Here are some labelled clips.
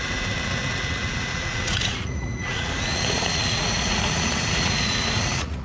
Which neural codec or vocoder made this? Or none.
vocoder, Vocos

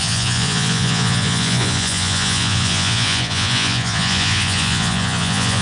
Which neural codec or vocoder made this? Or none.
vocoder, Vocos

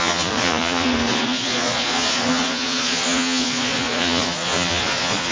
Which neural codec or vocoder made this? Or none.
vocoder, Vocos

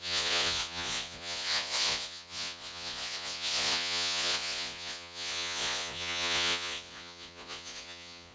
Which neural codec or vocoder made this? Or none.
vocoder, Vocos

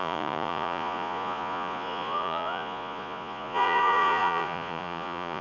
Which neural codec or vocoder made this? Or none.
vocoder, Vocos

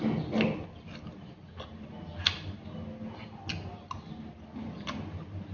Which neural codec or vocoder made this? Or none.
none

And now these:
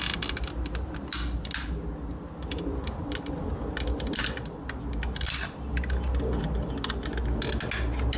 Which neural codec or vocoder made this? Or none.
none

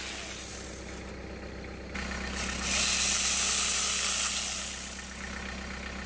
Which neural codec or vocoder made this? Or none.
none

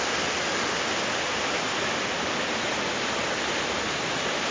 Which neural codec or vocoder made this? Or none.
none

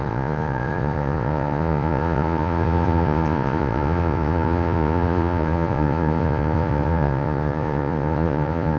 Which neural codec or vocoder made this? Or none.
vocoder, Vocos